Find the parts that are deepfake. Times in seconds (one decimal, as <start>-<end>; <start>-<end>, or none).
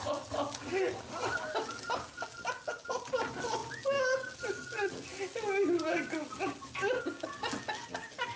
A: none